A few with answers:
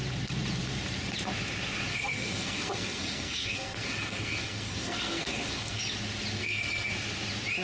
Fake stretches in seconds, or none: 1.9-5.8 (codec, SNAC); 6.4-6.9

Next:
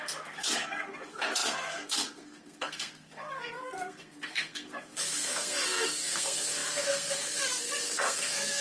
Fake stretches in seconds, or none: 0.0-8.6 (codec, SNAC)

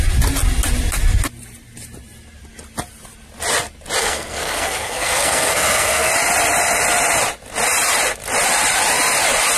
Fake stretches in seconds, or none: 4.0-6.1 (codec, SNAC)

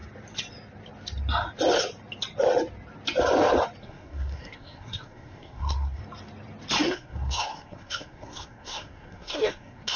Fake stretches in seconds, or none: 3.8-6.0 (codec, SNAC); 6.8-10.0